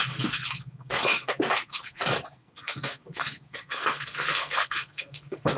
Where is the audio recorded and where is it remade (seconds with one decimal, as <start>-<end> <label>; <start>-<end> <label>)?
0.0-5.6 remade